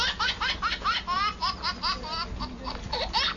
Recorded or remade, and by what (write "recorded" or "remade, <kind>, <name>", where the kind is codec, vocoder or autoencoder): recorded